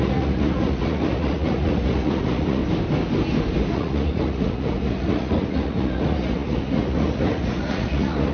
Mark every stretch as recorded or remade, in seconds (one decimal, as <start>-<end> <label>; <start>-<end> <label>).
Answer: 0.0-2.6 remade; 2.6-3.7 recorded; 3.7-8.3 remade